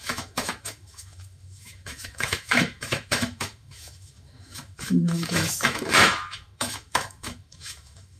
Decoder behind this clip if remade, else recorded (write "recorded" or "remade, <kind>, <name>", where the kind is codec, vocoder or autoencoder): remade, autoencoder, DAC-VAE